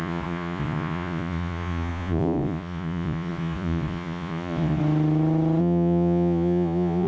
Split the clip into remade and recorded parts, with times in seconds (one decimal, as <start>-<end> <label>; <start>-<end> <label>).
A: 0.0-4.8 remade; 4.8-5.6 recorded; 5.6-7.1 remade